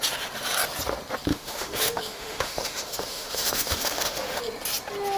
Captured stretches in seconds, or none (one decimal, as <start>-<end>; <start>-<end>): 0.0-1.3; 4.4-5.2